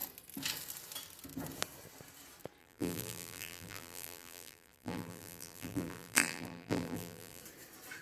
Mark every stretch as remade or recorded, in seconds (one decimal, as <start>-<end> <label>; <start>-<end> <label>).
0.0-2.6 recorded; 2.6-7.4 remade; 7.4-8.0 recorded